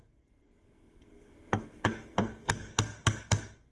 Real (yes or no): no